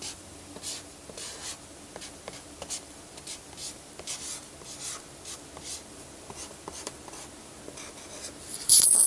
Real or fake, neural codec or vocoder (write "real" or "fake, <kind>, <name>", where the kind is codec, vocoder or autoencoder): real